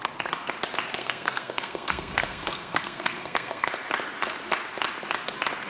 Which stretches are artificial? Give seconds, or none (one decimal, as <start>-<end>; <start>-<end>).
1.0-3.7